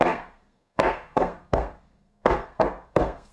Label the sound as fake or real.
fake